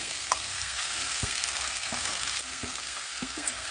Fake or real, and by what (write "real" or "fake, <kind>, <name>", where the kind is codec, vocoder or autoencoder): fake, codec, SNAC